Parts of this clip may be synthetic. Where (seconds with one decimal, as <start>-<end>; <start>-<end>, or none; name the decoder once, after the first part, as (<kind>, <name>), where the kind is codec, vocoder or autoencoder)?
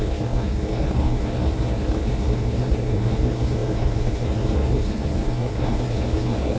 0.0-6.6 (codec, SNAC)